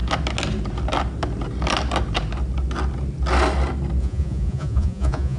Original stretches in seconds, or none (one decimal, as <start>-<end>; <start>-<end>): 0.0-4.0